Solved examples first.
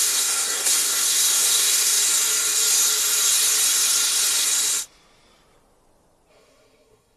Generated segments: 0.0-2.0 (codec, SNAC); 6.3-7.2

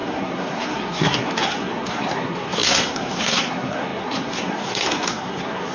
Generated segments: 0.0-5.7 (codec, SNAC)

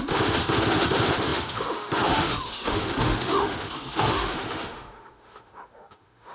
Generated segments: 0.0-6.3 (autoencoder, DAC-VAE)

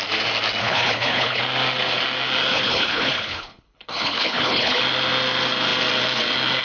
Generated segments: 0.6-1.4 (codec, HILCodec); 2.5-4.8

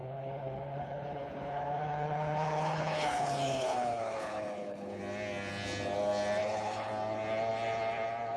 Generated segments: 0.0-5.0 (codec, HILCodec); 6.4-6.9